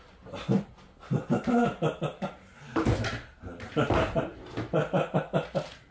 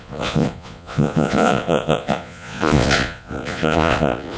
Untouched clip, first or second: first